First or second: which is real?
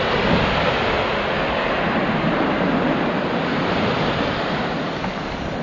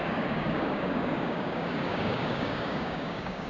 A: first